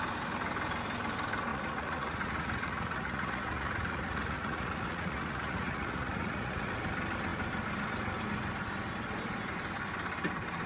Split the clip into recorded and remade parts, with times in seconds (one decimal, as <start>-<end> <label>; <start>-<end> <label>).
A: 0.0-1.5 recorded; 1.5-6.7 remade; 6.7-10.7 recorded